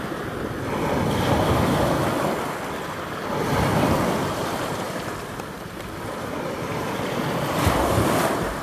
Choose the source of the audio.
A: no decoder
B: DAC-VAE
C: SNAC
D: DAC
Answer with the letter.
A